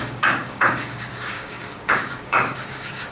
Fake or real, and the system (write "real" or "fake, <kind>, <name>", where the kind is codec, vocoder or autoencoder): fake, codec, DAC